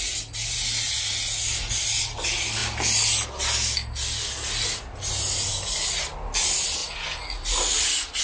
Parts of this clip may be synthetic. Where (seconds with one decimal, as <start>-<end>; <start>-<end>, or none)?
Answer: none